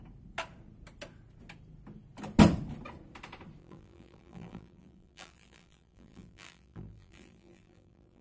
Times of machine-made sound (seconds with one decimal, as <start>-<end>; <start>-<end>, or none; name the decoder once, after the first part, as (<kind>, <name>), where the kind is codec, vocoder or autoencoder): 3.6-8.2 (vocoder, BigVGAN v2)

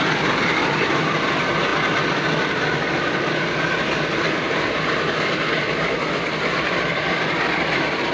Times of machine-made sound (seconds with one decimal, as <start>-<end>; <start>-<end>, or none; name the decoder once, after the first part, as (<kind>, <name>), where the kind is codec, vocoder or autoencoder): none

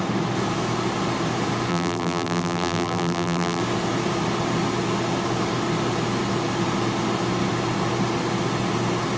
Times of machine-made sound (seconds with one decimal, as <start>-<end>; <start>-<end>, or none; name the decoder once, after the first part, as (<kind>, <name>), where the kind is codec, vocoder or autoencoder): 1.7-3.6 (vocoder, BigVGAN v2)